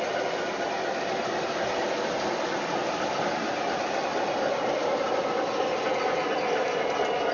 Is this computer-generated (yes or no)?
no